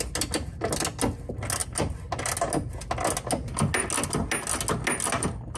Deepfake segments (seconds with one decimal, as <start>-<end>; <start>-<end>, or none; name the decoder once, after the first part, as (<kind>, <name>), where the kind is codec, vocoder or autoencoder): none